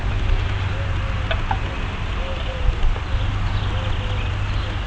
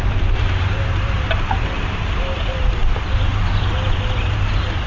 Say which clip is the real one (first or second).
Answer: first